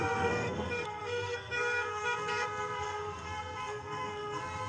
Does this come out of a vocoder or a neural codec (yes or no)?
yes